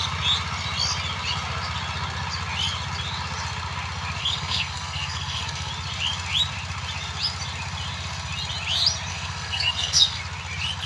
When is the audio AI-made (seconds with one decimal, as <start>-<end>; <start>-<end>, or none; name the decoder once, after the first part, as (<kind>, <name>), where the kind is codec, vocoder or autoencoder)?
4.2-5.7 (codec, SNAC); 9.1-10.2